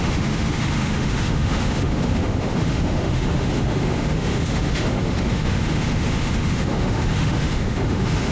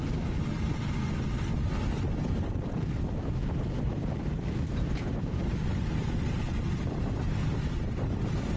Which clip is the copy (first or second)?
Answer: first